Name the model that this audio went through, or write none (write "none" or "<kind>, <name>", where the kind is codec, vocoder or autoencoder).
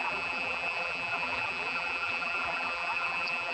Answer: vocoder, BigVGAN v2